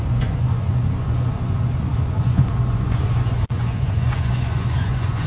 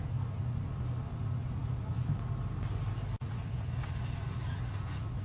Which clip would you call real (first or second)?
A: second